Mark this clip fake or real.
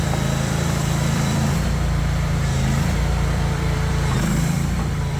fake